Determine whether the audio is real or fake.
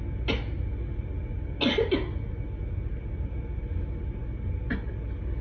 real